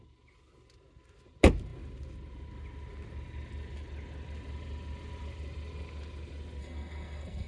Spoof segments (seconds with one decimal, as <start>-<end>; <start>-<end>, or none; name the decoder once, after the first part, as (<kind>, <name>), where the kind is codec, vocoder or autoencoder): 6.6-7.5 (codec, SNAC)